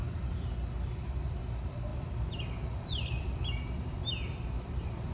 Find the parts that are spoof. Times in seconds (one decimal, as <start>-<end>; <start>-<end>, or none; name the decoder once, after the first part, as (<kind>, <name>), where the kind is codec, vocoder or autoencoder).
0.0-1.4 (vocoder, BigVGAN v2); 1.9-3.4